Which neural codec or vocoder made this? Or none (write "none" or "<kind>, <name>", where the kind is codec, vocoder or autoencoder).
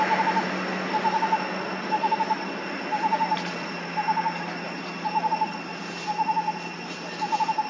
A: none